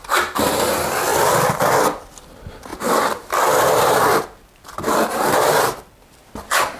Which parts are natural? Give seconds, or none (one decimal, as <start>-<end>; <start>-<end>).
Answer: 1.1-2.2; 2.7-4.9